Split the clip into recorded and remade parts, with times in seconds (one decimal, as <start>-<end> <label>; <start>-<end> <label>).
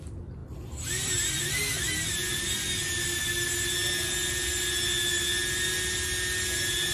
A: 0.0-6.9 recorded